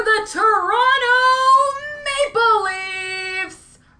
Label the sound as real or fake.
real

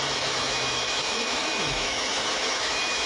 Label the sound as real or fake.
fake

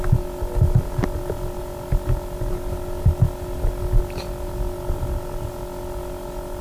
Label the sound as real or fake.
real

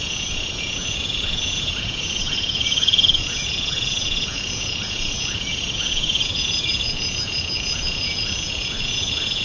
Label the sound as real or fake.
fake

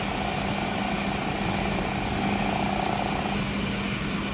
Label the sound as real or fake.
real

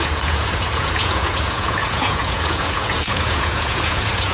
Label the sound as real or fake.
fake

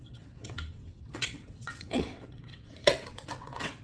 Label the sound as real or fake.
fake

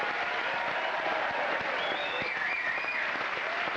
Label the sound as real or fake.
real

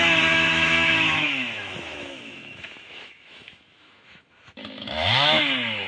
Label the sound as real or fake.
fake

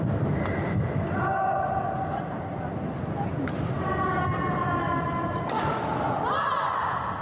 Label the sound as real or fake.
real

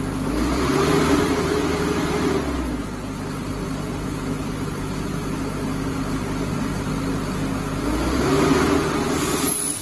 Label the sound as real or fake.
real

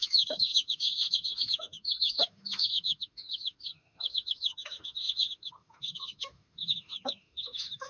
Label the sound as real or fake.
fake